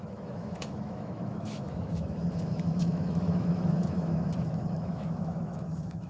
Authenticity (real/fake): fake